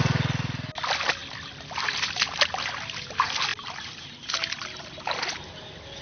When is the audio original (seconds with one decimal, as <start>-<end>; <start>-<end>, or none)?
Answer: 0.0-6.0